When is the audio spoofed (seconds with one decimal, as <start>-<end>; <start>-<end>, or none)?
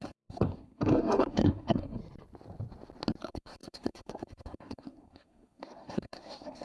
0.0-2.0; 3.2-6.6